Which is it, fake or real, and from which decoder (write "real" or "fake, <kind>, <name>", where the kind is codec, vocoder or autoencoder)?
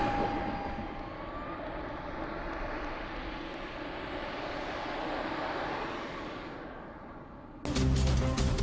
real